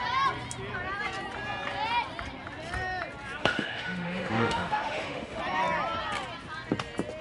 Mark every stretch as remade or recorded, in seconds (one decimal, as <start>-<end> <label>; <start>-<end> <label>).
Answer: 0.0-3.4 recorded; 3.4-5.4 remade; 5.4-7.2 recorded

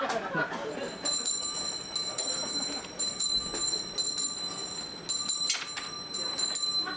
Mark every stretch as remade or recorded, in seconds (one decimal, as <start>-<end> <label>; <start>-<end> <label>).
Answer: 0.0-7.0 recorded

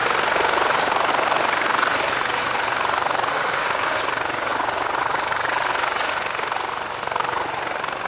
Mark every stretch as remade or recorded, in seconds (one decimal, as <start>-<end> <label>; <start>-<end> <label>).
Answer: 0.0-3.3 recorded; 3.3-4.0 remade; 4.0-8.1 recorded

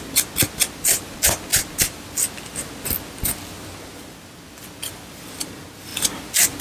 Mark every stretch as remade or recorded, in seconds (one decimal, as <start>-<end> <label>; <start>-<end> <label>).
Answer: 0.0-6.6 recorded

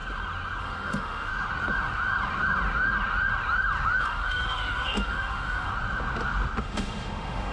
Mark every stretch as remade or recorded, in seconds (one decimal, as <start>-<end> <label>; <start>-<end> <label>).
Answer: 0.0-0.6 recorded; 0.6-1.3 remade; 1.3-4.0 recorded; 4.0-5.7 remade; 5.7-6.6 recorded; 6.6-7.5 remade

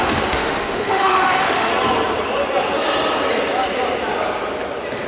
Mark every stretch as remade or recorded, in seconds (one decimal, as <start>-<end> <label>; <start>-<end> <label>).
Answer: 0.0-1.7 remade; 1.7-5.1 recorded